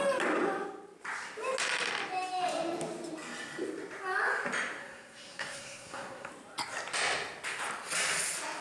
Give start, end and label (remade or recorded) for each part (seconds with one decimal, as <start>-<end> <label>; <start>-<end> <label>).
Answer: 0.0-4.8 recorded; 4.8-6.3 remade; 6.3-8.6 recorded